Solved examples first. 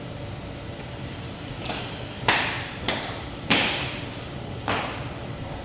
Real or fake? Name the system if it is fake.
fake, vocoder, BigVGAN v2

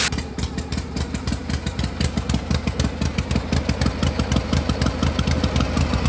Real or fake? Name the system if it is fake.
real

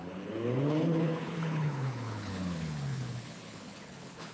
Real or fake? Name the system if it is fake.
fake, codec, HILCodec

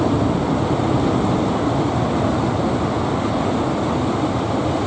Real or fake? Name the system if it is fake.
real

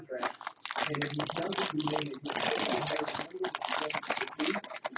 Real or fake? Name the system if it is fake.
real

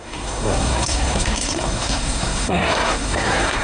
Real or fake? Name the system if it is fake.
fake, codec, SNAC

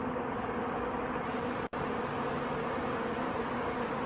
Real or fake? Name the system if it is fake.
real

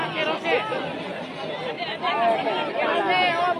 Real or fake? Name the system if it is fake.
real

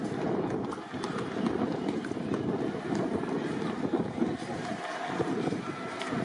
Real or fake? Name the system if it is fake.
real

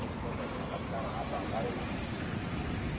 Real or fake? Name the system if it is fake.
real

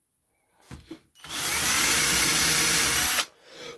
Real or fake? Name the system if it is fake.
real